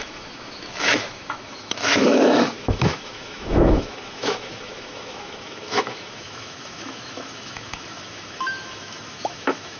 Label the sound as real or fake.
fake